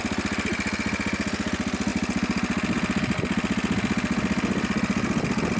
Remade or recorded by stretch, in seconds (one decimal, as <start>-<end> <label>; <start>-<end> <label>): 0.0-5.6 recorded